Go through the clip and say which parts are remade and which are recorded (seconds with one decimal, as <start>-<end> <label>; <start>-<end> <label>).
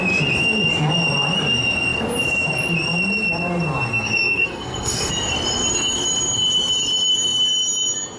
0.0-3.9 recorded; 3.9-5.1 remade; 5.1-8.2 recorded